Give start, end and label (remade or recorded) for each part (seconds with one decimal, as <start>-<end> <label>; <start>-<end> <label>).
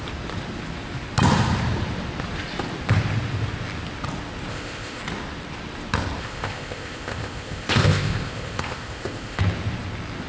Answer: 0.0-4.5 recorded; 4.5-5.0 remade; 5.0-6.2 recorded; 6.2-9.4 remade; 9.4-10.3 recorded